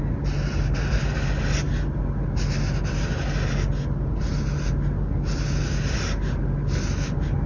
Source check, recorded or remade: recorded